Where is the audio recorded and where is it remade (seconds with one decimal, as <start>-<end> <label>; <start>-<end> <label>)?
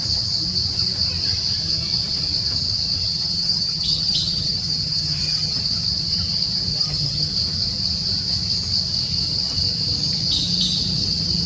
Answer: 0.0-3.1 recorded; 3.1-5.6 remade; 5.6-6.7 recorded; 6.7-7.3 remade; 7.3-11.5 recorded